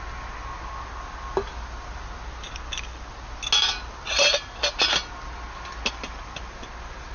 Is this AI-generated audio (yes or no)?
no